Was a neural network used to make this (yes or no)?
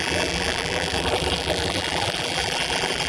yes